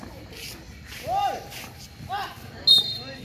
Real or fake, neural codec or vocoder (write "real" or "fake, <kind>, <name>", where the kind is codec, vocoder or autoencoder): real